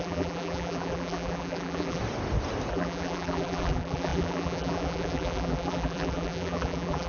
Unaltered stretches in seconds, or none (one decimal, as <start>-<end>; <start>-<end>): 2.0-2.7